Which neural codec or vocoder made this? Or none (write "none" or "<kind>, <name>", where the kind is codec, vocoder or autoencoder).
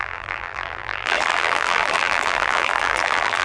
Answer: vocoder, BigVGAN v2